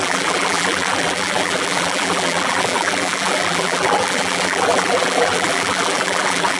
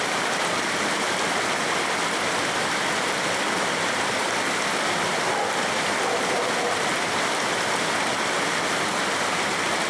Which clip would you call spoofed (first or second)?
first